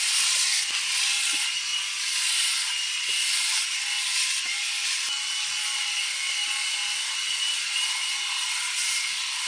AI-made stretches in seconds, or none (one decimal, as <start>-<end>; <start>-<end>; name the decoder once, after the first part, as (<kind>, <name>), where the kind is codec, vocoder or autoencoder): none